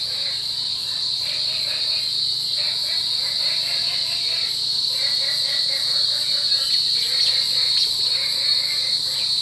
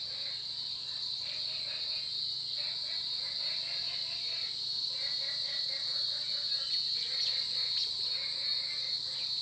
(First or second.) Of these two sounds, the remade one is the first